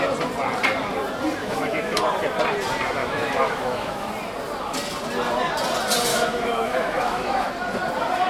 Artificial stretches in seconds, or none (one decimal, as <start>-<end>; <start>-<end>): 1.4-2.0; 3.0-4.1; 6.1-7.5